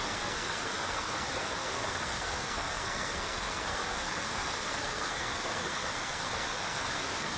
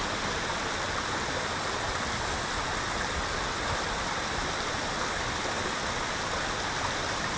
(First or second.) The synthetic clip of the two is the first